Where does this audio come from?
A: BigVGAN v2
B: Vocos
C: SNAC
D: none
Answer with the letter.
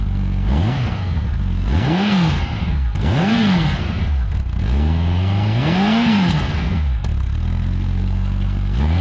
C